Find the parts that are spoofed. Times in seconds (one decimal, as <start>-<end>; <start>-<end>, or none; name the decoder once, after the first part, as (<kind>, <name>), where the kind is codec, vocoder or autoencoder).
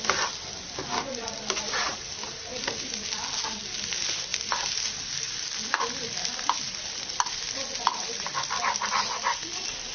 none